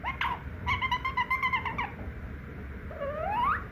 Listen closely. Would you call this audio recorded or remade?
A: recorded